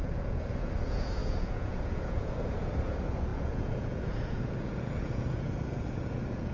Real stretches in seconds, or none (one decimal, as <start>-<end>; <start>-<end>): none